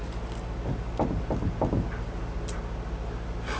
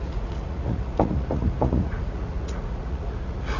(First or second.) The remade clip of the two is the second